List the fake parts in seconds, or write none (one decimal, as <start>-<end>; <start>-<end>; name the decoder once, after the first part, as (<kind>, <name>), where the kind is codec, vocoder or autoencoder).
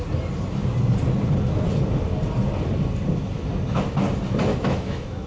4.5-5.3 (autoencoder, DAC-VAE)